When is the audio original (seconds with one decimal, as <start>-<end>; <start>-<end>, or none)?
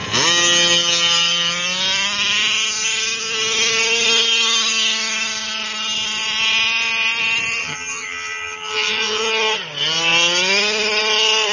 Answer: 0.0-7.6; 9.3-11.5